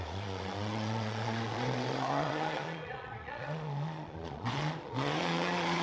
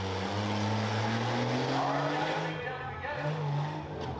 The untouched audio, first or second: second